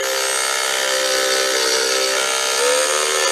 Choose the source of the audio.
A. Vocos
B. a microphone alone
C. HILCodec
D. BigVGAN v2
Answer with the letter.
B